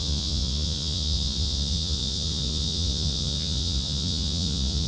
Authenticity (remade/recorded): remade